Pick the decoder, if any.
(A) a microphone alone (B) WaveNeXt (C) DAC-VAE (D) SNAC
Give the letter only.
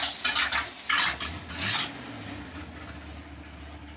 A